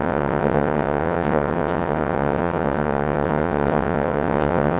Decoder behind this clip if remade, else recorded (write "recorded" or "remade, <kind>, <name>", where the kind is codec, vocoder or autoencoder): remade, vocoder, WaveNeXt